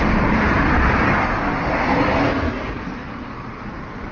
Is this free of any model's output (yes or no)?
yes